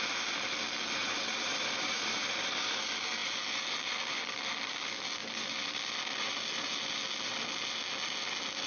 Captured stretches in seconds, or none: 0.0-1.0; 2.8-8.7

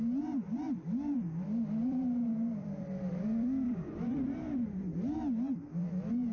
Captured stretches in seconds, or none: 0.0-1.8; 4.8-6.3

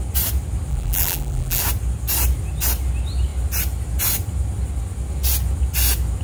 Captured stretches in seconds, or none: 0.0-0.7; 1.6-6.2

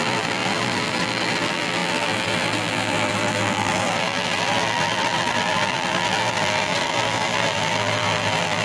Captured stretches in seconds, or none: none